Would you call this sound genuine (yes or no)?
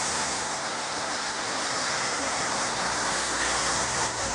no